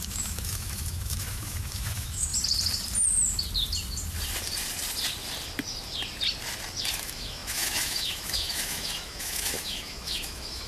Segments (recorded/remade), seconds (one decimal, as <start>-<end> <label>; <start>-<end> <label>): 0.0-2.3 remade; 2.3-6.9 recorded; 6.9-10.7 remade